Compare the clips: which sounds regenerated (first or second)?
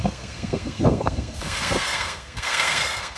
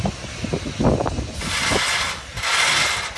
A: first